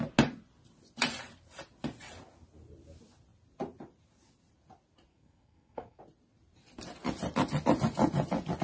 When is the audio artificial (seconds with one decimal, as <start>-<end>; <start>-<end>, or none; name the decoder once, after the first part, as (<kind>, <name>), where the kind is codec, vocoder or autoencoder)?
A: 5.1-6.0 (codec, SNAC)